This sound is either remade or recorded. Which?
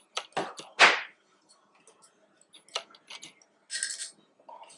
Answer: recorded